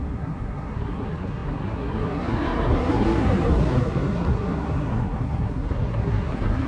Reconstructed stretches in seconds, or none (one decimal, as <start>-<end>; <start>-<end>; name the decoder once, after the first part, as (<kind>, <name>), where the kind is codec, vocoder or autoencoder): 0.0-6.7 (codec, SNAC)